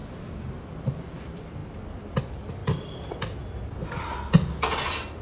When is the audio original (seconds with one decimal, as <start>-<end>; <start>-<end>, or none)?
0.0-0.6; 1.6-2.2; 2.6-5.2